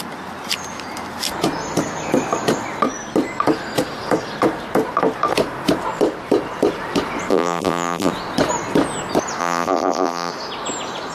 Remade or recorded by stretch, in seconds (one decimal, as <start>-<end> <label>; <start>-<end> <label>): 0.0-7.3 recorded; 7.3-8.1 remade; 8.1-9.4 recorded; 9.4-10.3 remade; 10.3-11.1 recorded